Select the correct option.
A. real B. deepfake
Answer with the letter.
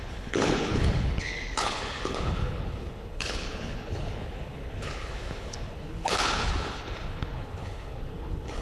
B